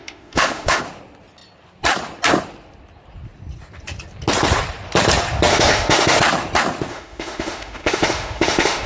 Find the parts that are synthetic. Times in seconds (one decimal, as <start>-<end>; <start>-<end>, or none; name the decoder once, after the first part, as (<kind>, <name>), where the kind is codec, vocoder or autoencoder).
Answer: 0.0-0.8 (autoencoder, DAC-VAE); 5.5-6.2; 6.9-8.9